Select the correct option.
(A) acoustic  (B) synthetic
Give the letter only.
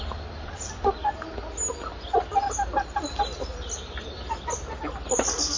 A